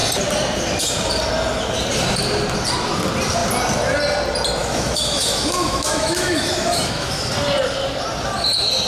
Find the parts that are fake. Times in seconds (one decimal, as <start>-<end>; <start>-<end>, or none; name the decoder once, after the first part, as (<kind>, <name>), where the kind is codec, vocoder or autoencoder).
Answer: 4.6-7.3 (autoencoder, DAC-VAE)